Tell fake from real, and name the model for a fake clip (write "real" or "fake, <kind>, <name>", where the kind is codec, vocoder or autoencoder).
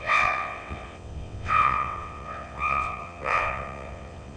fake, vocoder, WaveNeXt